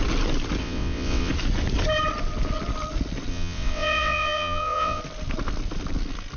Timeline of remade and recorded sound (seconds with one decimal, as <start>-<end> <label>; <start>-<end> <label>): 0.0-0.6 recorded; 0.6-1.3 remade; 1.3-3.3 recorded; 3.3-5.0 remade; 5.0-6.4 recorded